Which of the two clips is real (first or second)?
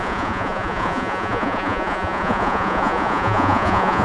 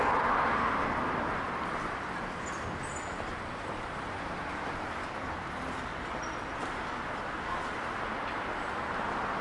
second